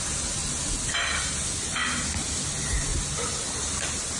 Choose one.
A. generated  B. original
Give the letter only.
B